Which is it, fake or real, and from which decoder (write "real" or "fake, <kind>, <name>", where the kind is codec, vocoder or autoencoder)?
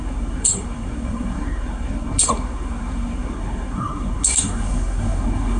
fake, codec, SNAC